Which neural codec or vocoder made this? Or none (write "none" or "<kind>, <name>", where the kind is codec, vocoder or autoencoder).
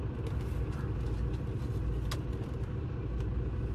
none